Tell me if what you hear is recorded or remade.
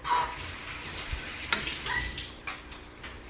recorded